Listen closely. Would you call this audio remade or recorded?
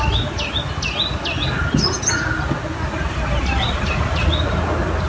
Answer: recorded